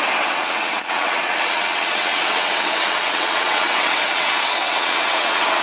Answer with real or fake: fake